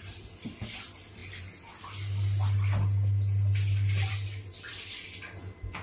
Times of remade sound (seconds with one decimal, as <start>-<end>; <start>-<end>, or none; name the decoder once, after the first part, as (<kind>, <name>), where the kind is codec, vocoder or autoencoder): none